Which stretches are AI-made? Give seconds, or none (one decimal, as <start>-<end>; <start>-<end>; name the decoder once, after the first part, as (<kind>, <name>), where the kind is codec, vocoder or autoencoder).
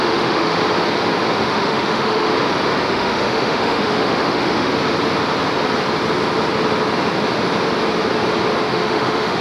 0.0-0.6 (autoencoder, DAC-VAE); 1.4-2.3; 2.9-4.7; 8.7-9.4